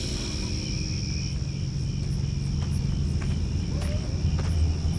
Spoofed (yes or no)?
no